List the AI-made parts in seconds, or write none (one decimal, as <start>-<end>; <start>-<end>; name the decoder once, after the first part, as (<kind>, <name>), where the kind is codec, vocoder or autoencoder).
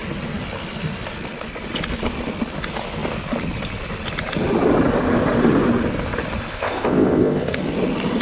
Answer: 6.5-7.6 (codec, ZipCodec)